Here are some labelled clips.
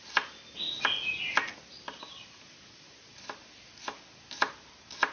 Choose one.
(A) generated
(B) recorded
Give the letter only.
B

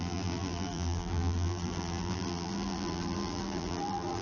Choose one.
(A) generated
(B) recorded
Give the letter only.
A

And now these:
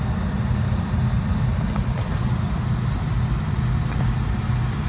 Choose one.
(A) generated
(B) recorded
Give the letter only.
B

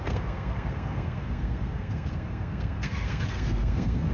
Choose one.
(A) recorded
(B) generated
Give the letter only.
B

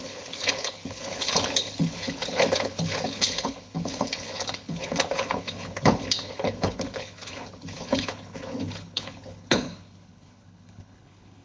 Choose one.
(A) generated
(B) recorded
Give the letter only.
A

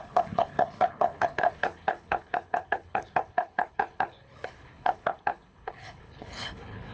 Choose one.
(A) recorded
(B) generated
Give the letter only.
B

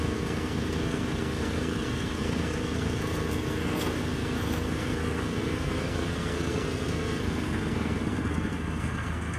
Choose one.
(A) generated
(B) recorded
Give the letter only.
A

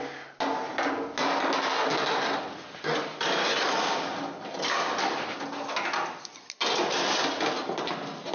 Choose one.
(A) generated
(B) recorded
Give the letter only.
B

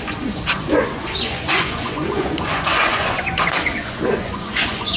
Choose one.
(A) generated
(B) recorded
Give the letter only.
A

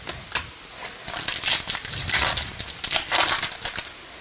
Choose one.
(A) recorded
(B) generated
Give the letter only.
A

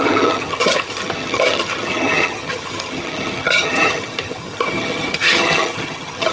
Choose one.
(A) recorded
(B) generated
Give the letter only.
B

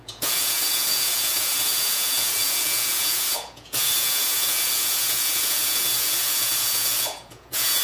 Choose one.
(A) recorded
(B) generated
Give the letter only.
B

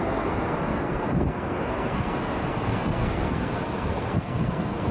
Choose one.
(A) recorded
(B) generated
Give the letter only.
B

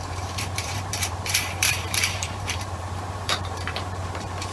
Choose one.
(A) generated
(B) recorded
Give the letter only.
A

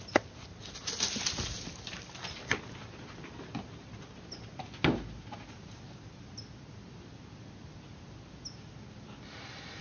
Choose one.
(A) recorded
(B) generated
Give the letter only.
A